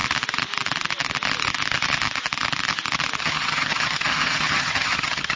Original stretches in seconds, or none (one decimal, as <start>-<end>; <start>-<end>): 0.0-3.2